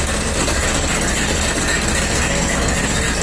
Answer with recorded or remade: remade